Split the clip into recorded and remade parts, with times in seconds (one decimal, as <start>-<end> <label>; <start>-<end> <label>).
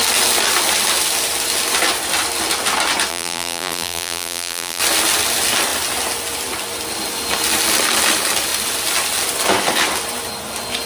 0.0-3.1 recorded; 3.1-4.8 remade; 4.8-10.9 recorded